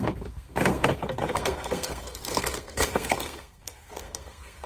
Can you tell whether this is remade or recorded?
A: remade